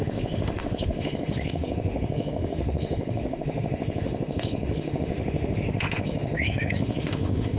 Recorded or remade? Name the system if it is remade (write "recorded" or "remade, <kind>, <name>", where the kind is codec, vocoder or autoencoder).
remade, autoencoder, DAC-VAE